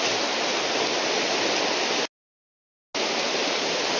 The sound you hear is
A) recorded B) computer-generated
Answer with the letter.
A